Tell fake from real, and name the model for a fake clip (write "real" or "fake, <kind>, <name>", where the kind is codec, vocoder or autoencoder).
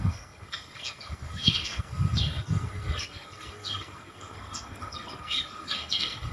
fake, codec, SNAC